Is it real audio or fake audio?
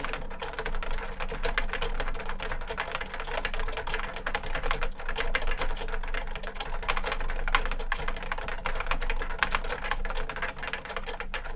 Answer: real